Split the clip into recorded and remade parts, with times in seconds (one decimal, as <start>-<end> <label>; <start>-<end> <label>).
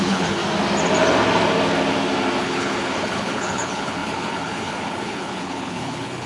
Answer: 0.0-0.4 remade; 0.4-2.4 recorded; 2.4-6.3 remade